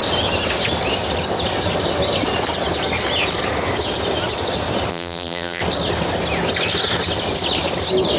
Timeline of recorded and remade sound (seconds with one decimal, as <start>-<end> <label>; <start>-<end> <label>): 0.0-4.9 recorded; 4.9-5.6 remade; 5.6-8.2 recorded